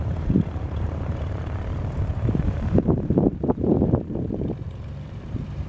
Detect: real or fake fake